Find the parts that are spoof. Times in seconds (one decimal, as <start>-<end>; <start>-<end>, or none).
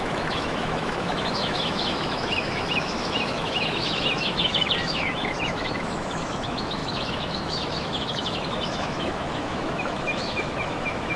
0.0-11.2